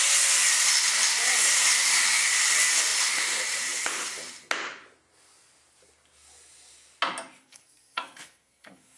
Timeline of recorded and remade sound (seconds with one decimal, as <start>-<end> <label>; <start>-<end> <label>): 0.0-7.4 recorded; 7.4-9.0 remade